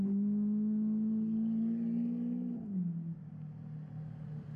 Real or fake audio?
real